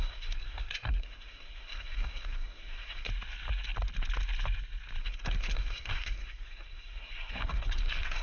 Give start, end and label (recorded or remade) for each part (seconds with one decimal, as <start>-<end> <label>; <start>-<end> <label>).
0.0-3.1 remade; 3.1-5.0 recorded; 5.0-8.2 remade